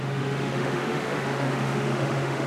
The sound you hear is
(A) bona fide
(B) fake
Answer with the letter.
B